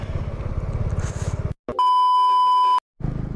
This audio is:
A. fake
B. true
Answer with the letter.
B